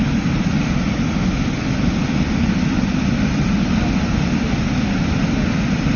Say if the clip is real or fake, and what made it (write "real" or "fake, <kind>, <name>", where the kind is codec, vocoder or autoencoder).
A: real